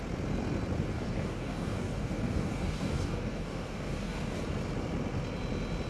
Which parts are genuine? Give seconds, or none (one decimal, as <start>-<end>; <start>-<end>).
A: 0.0-0.9; 4.4-5.9